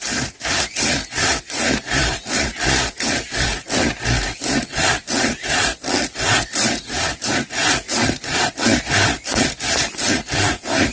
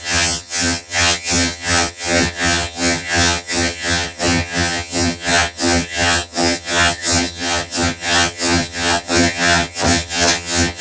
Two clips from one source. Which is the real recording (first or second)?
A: first